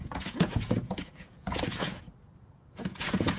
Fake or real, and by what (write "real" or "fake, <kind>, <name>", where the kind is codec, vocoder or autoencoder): fake, vocoder, Vocos